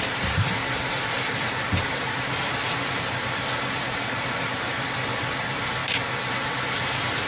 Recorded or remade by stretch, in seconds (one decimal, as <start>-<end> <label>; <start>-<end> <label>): 0.0-5.8 remade; 5.8-6.3 recorded; 6.3-7.3 remade